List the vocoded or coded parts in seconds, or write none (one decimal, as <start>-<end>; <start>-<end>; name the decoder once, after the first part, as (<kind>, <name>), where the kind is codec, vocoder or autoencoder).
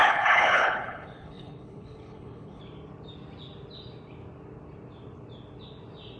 0.0-2.6 (codec, HILCodec)